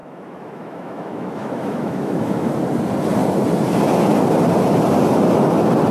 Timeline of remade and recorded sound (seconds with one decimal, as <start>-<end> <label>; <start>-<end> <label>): 0.0-2.5 remade; 2.5-5.9 recorded